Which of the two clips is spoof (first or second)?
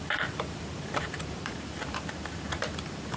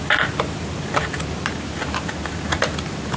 first